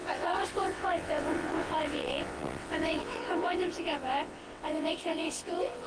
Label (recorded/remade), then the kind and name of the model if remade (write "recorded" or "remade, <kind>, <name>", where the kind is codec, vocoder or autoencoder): remade, vocoder, WaveNeXt